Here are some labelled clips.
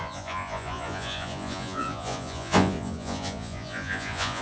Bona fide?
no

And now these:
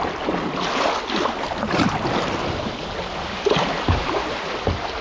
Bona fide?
yes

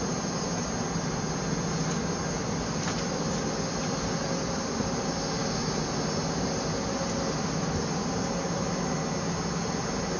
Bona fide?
yes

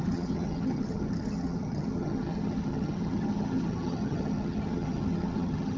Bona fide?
no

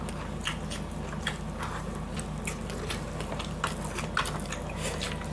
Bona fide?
yes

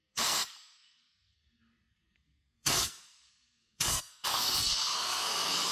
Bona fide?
no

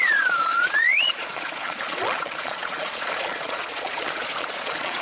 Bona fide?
no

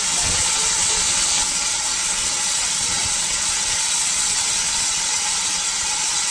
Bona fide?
no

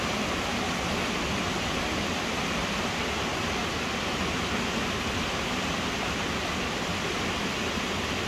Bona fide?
yes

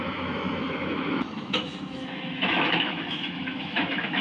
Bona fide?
no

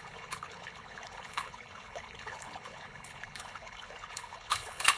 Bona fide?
no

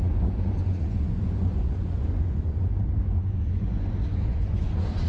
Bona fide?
no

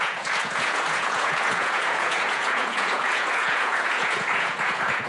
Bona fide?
no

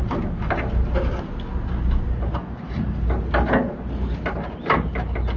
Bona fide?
yes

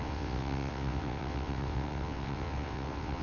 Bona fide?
no